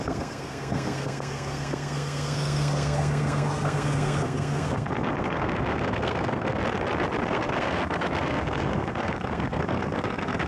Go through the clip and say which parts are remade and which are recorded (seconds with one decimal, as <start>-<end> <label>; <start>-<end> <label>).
0.0-6.6 remade; 6.6-7.3 recorded; 7.3-10.5 remade